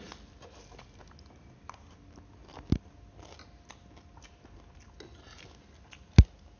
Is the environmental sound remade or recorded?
recorded